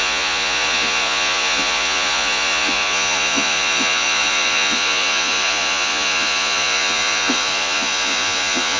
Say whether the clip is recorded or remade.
remade